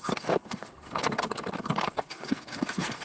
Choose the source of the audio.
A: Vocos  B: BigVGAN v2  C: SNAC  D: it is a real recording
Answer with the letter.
C